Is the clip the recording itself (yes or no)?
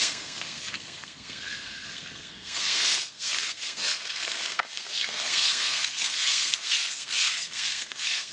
no